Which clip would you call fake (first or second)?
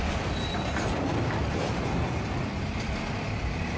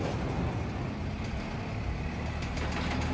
first